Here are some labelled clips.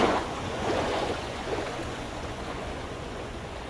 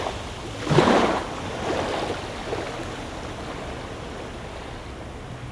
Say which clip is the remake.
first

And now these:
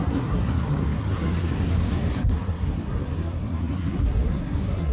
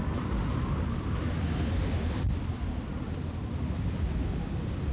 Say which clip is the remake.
first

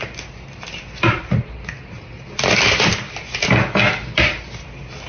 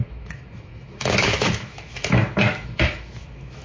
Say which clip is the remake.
second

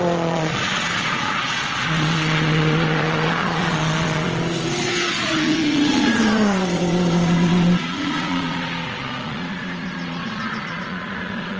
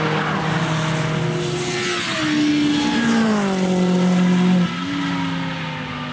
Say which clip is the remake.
first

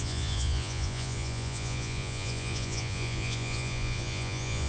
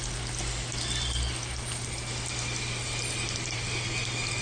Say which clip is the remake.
first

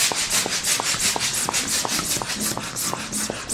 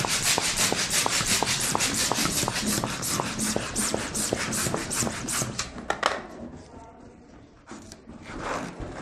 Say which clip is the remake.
second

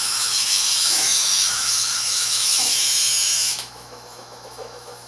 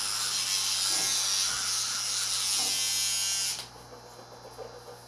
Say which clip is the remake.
first